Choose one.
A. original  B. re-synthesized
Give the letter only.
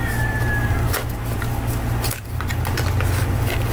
A